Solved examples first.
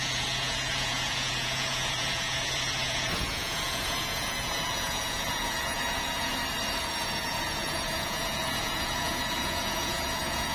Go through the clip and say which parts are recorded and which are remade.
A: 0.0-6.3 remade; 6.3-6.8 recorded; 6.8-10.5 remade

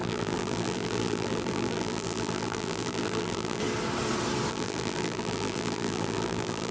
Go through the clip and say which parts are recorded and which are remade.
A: 0.0-3.6 remade; 3.6-4.5 recorded; 4.5-6.7 remade